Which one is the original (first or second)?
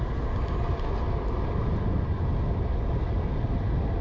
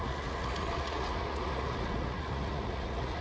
first